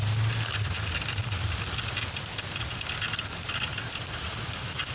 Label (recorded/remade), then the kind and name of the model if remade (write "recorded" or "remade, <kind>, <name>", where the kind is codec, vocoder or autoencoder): recorded